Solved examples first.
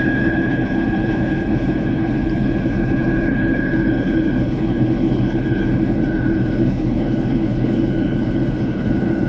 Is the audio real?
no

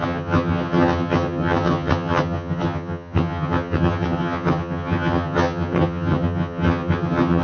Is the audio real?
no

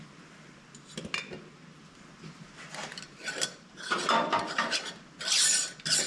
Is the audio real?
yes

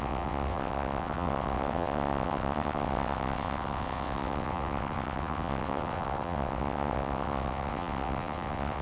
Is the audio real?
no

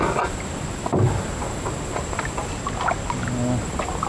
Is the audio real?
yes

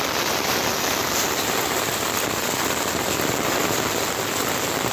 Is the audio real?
yes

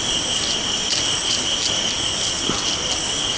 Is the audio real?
yes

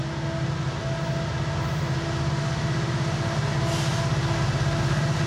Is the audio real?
yes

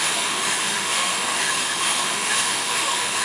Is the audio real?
no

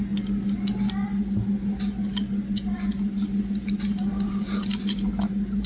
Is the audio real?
yes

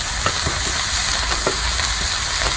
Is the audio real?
yes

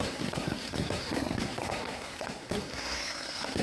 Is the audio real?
no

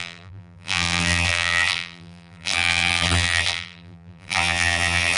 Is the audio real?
no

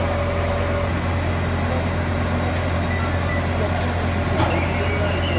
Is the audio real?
yes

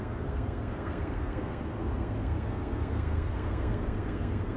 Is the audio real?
no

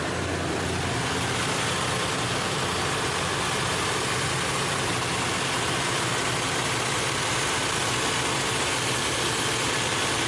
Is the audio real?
yes